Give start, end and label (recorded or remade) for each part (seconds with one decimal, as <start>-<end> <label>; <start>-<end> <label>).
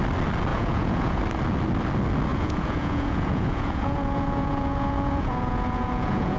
0.0-0.5 recorded; 0.5-1.2 remade; 1.2-2.3 recorded; 2.3-6.4 remade